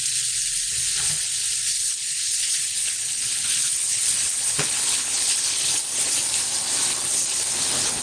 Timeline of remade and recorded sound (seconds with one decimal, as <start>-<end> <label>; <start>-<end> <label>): 0.0-1.7 recorded; 1.7-6.2 remade; 6.2-6.9 recorded; 6.9-8.0 remade